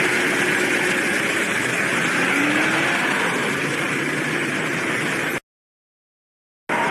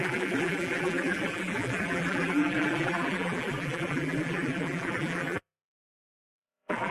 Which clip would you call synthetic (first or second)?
second